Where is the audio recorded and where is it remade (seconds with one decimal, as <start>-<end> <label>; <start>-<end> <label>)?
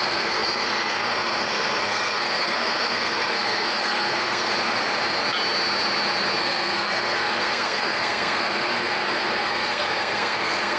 0.0-4.5 remade; 4.5-6.4 recorded; 6.4-10.8 remade